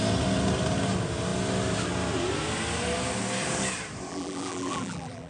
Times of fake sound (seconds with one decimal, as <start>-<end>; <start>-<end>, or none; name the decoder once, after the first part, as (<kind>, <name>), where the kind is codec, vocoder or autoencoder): 4.1-5.3 (vocoder, BigVGAN v2)